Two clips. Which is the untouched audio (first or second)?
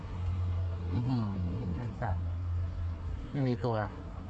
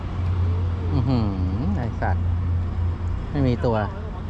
second